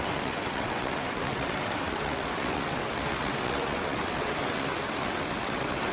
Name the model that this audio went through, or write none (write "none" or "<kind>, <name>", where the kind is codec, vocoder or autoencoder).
vocoder, WaveNeXt